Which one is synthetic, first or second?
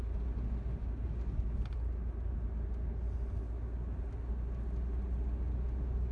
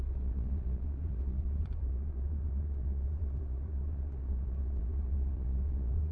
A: second